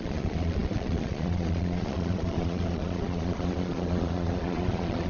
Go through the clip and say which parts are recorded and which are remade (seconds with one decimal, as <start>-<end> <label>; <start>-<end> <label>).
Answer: 0.0-5.1 remade